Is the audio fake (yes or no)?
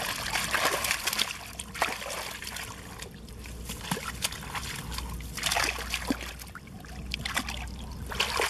no